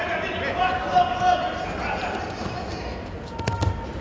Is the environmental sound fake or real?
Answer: real